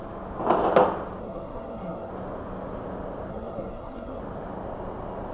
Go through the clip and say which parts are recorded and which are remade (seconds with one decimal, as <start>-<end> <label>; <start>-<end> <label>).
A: 0.0-1.2 recorded; 1.2-2.1 remade; 2.1-3.3 recorded; 3.3-4.2 remade; 4.2-5.3 recorded